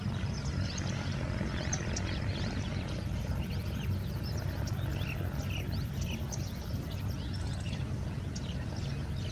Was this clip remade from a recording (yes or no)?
no